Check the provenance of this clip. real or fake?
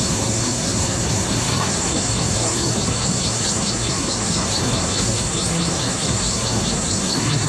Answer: fake